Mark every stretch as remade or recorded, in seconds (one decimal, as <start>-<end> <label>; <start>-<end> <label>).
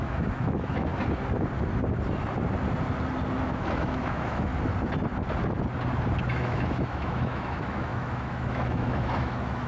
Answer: 0.0-0.9 remade; 0.9-3.4 recorded; 3.4-4.5 remade; 4.5-6.3 recorded; 6.3-9.7 remade